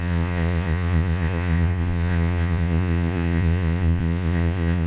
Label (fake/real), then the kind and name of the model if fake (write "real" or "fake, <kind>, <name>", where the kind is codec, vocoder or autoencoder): fake, vocoder, Vocos